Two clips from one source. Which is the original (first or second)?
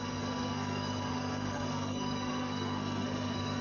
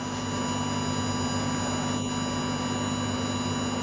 second